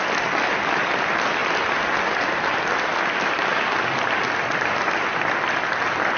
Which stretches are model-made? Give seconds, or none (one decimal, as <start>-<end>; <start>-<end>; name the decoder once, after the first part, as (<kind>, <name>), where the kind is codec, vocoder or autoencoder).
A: none